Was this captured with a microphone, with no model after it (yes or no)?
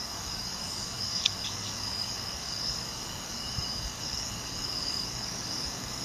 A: no